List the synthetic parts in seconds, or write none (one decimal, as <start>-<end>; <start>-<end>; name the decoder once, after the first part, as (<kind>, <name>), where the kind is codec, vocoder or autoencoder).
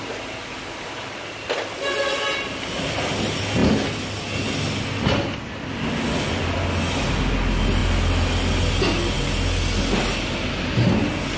none